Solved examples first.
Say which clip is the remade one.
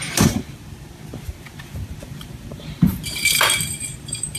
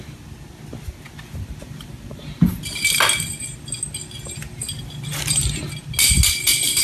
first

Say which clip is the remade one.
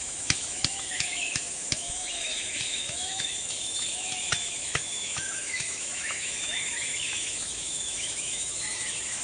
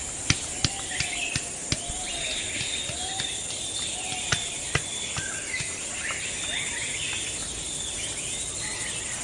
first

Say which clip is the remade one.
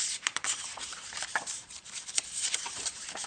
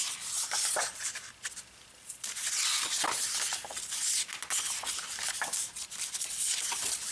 first